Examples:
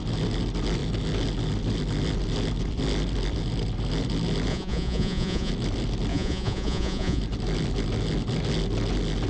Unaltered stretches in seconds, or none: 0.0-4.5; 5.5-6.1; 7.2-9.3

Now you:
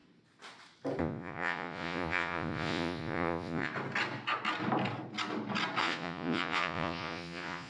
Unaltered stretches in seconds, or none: 0.0-1.0; 3.7-5.8

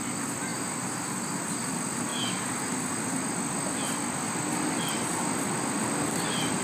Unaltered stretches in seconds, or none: 0.0-6.6

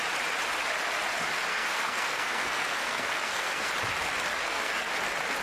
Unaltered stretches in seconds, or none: 0.0-1.5; 3.7-4.4; 4.9-5.4

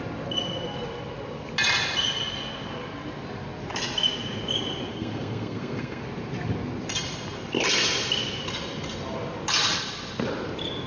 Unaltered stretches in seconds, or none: 0.0-4.9; 6.0-10.9

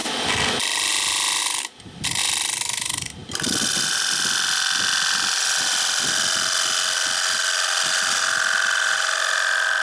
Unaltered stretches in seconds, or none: 0.0-9.8